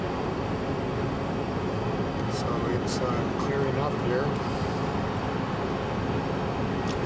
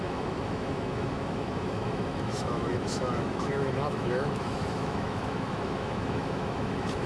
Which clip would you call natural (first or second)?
first